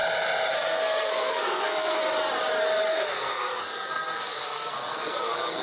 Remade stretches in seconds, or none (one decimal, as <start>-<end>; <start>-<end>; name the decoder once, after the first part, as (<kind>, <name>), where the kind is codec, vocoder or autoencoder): 0.5-2.0 (codec, SNAC); 2.9-5.6